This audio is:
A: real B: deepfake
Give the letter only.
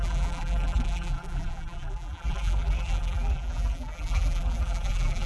B